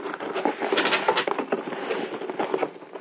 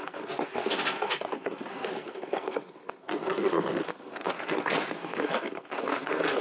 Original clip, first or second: first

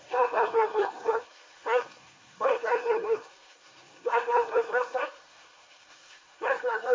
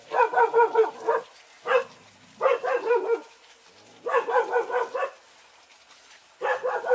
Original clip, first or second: second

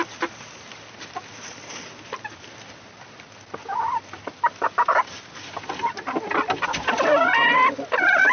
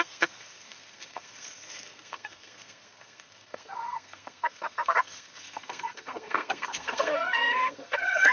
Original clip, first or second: first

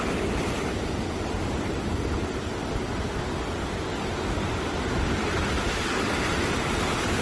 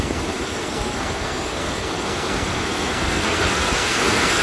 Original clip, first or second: first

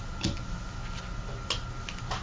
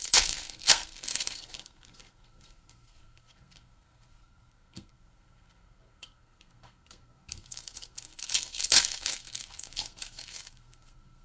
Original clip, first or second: first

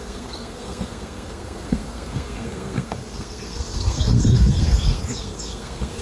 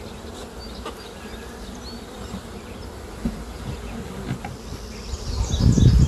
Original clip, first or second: second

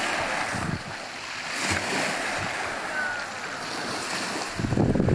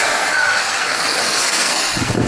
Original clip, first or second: first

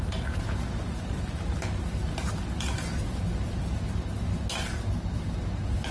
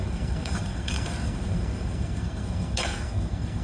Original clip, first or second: first